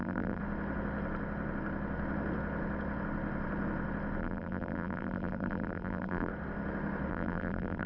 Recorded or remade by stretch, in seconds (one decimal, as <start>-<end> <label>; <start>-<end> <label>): 0.0-0.4 remade; 0.4-4.2 recorded; 4.2-6.3 remade; 6.3-7.1 recorded; 7.1-7.9 remade